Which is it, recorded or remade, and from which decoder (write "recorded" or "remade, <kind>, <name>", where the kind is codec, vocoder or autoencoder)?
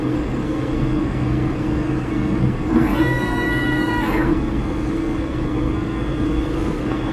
remade, codec, SNAC